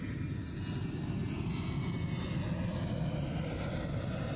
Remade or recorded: recorded